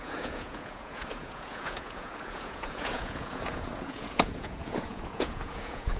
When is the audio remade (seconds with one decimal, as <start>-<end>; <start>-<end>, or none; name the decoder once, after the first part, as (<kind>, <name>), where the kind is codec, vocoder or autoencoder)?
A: 0.0-6.0 (vocoder, Vocos)